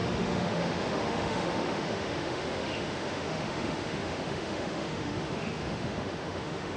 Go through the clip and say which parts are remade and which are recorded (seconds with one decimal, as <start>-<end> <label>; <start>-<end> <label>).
0.0-6.8 remade